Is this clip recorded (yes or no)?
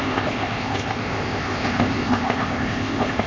no